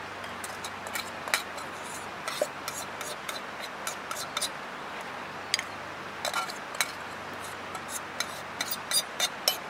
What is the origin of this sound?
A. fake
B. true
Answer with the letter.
B